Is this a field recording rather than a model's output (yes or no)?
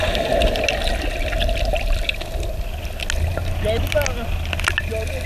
yes